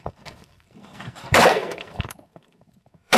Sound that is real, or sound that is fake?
fake